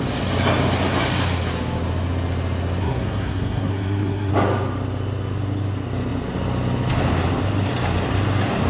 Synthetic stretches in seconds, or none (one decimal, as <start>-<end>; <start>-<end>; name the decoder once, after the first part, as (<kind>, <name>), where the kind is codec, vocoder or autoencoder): 2.8-4.3 (codec, SNAC)